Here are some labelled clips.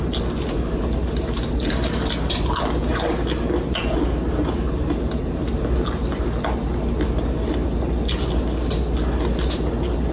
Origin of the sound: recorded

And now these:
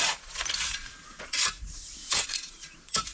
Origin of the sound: remade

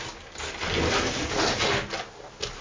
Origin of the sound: recorded